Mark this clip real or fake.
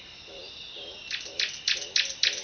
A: real